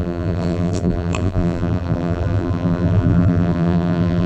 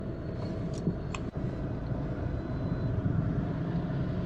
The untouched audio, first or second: second